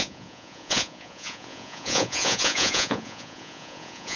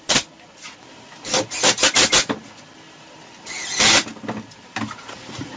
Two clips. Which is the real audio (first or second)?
second